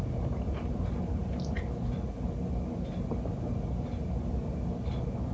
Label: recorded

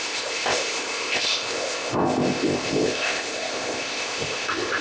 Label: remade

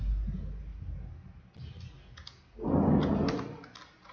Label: recorded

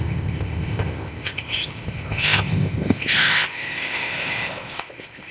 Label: remade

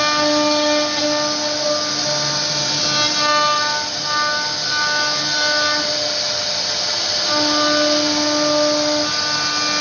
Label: recorded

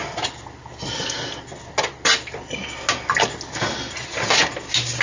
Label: recorded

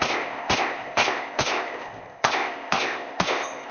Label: remade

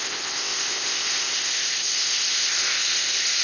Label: remade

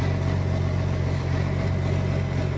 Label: recorded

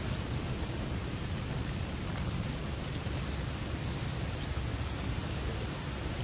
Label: recorded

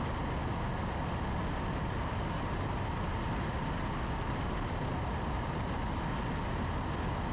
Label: recorded